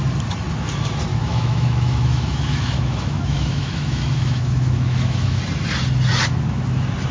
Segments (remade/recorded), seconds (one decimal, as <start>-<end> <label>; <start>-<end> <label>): 0.0-1.1 recorded; 1.1-5.4 remade; 5.4-7.1 recorded